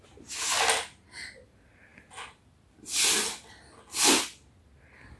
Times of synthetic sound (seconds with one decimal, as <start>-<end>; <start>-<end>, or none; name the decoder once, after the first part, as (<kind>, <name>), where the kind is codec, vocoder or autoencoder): none